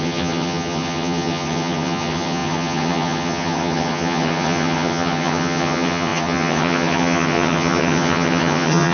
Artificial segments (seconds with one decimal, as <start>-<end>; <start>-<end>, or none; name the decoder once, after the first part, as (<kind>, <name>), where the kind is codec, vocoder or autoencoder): 0.0-8.9 (vocoder, HiFi-GAN)